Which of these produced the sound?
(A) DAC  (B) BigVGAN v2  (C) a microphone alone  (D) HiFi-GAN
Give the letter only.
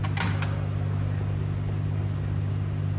C